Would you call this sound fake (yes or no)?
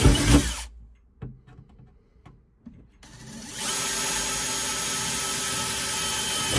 no